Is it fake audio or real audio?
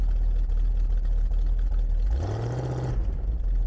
real